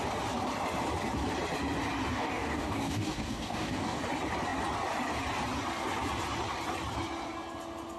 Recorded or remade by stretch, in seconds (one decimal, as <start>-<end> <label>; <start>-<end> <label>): 0.0-2.1 recorded; 2.1-4.0 remade; 4.0-8.0 recorded